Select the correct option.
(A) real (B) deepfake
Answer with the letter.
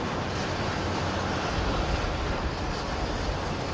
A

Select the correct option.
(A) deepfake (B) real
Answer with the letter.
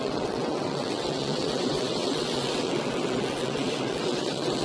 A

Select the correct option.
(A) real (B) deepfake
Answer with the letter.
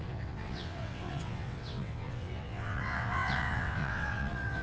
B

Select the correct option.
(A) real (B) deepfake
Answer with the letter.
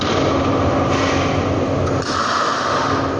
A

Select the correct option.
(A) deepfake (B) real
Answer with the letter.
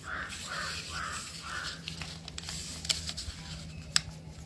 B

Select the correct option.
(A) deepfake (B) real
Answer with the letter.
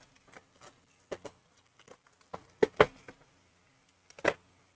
B